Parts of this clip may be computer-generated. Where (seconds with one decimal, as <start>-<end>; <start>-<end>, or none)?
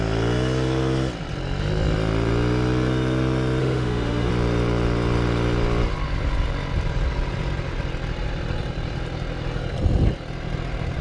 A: 3.6-4.3